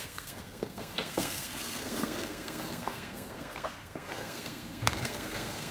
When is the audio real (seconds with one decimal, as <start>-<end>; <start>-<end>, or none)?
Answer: none